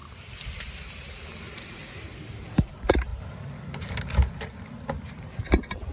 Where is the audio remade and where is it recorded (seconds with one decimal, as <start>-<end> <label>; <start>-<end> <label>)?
0.0-3.1 remade; 3.1-5.1 recorded; 5.1-5.9 remade